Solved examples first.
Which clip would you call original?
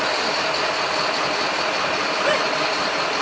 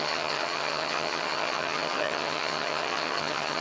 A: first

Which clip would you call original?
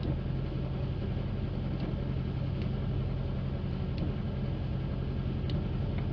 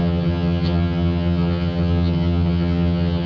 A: first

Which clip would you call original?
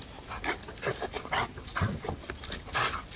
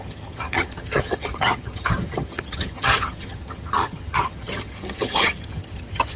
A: first